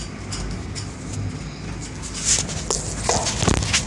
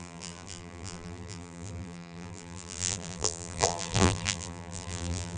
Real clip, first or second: first